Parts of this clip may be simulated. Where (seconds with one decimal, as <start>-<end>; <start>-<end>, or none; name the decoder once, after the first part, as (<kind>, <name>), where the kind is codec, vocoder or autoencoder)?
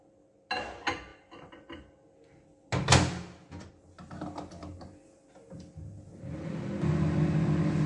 none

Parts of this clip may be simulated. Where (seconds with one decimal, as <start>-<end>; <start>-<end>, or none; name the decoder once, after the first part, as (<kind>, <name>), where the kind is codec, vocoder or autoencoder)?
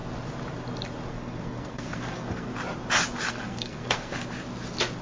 1.1-2.5 (codec, SNAC); 3.3-4.1